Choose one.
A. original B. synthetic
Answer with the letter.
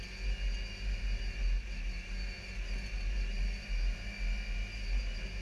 A